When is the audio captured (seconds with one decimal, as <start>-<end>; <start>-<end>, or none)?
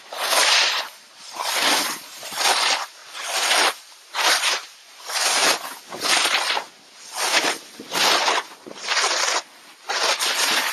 0.0-10.7